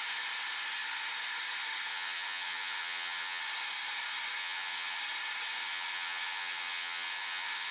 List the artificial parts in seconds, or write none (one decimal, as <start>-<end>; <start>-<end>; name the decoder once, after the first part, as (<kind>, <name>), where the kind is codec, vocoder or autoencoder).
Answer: 1.9-3.4 (vocoder, HiFi-GAN); 4.4-5.0; 5.6-7.7

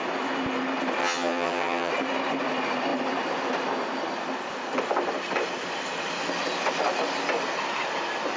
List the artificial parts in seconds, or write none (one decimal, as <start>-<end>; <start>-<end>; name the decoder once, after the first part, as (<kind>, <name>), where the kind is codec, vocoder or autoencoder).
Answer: 1.0-1.9 (vocoder, HiFi-GAN)

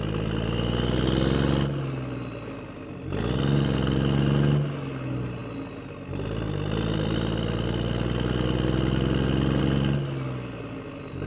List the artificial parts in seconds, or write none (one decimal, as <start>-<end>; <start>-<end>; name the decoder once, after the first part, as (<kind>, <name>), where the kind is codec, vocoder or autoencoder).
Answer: none

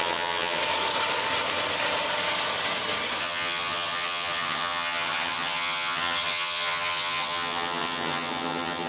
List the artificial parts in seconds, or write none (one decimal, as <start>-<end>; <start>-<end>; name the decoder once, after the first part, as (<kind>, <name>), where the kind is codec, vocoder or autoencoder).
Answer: 0.0-0.6 (vocoder, HiFi-GAN); 3.2-8.9

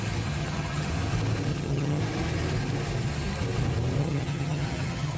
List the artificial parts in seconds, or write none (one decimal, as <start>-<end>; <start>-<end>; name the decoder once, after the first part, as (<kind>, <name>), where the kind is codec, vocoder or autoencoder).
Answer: 0.4-0.9 (vocoder, HiFi-GAN); 1.5-2.0; 4.0-5.2

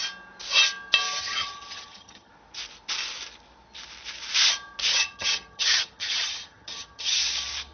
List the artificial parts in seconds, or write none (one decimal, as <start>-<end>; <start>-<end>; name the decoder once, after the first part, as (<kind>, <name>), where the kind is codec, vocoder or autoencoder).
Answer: 1.2-2.3 (vocoder, HiFi-GAN); 4.9-7.2

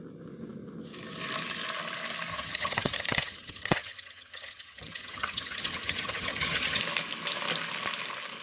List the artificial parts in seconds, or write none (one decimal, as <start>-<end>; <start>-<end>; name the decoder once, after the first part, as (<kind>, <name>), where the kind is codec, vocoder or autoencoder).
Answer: 2.3-6.8 (vocoder, HiFi-GAN)